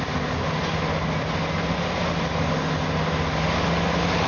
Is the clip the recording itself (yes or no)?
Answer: yes